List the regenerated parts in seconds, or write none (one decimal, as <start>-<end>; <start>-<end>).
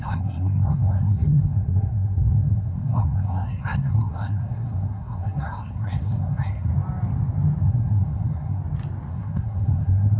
0.0-6.7; 7.6-8.6; 9.1-10.2